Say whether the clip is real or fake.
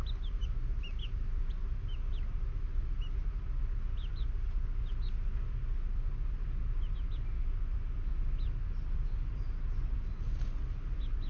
real